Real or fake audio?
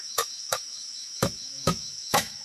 fake